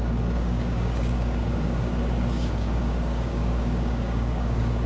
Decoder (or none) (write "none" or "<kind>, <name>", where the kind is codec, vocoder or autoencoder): codec, DAC